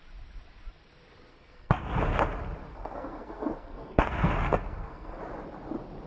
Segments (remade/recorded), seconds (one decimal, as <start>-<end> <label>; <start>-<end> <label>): 0.0-1.3 recorded; 1.3-2.0 remade; 2.0-2.7 recorded; 2.7-5.2 remade; 5.2-6.1 recorded